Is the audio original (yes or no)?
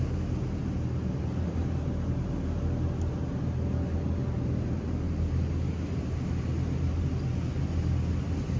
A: yes